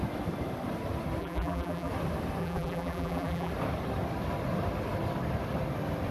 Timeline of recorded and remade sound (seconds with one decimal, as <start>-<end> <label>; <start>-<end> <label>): 0.0-1.2 recorded; 1.2-1.9 remade; 1.9-2.4 recorded; 2.4-3.5 remade; 3.5-6.1 recorded